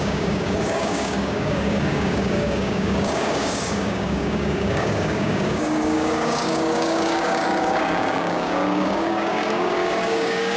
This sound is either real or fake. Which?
fake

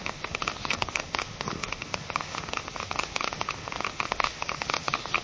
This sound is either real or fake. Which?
fake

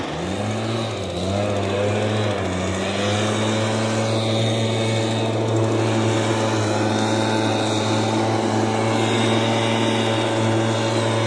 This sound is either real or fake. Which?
real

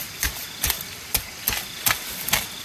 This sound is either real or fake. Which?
real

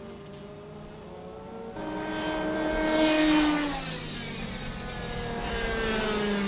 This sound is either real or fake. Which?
real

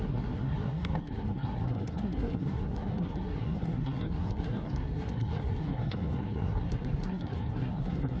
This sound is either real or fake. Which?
fake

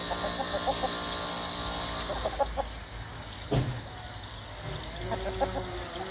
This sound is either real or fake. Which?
real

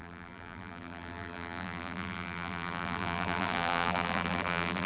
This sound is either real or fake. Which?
fake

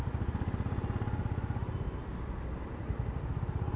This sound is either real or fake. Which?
real